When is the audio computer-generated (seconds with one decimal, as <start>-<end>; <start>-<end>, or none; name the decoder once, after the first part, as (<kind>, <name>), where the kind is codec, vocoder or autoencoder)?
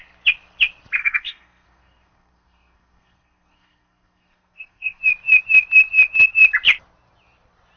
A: 1.0-5.0 (codec, SNAC)